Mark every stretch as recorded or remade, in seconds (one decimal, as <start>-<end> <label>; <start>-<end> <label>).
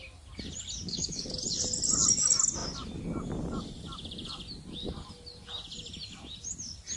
0.0-0.8 recorded; 0.8-1.3 remade; 1.3-7.0 recorded